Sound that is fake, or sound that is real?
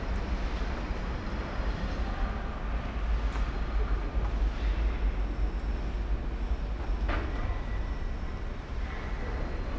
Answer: real